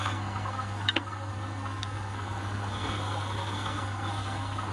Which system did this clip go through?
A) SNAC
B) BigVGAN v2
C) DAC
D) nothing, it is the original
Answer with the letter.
A